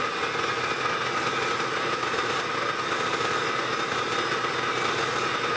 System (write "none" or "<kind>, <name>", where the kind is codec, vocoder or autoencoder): none